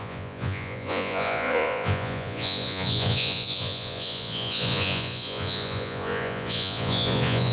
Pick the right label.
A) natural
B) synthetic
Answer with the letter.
B